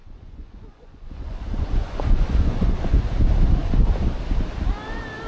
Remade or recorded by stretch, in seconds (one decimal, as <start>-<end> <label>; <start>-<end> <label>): 0.0-3.2 remade; 3.2-5.3 recorded